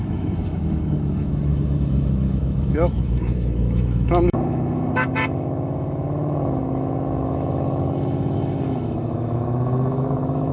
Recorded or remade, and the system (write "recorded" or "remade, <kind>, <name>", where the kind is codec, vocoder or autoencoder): remade, autoencoder, DAC-VAE